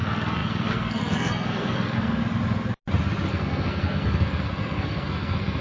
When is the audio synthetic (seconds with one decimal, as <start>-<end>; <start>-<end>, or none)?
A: 0.0-2.2; 3.3-5.6